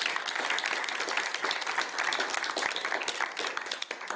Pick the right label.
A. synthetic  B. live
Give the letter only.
B